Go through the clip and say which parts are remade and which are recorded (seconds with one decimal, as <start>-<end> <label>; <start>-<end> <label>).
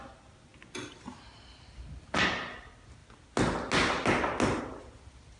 0.0-5.4 recorded